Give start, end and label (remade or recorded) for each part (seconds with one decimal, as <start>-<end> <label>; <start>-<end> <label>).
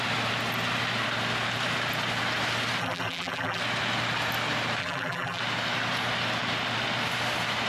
0.0-2.8 recorded; 2.8-3.6 remade; 3.6-4.8 recorded; 4.8-5.4 remade; 5.4-7.7 recorded